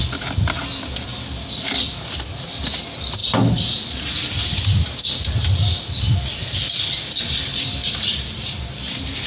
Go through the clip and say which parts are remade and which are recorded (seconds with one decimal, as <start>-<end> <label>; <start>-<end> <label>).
0.0-9.3 recorded